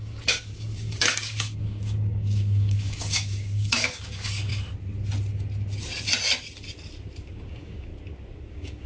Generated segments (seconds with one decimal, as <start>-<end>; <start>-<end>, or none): 0.0-4.5; 7.5-7.9; 8.5-8.9